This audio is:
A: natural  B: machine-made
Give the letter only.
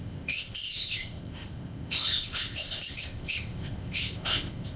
B